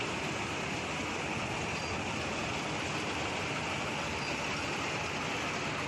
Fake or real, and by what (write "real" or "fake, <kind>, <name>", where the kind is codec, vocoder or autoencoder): real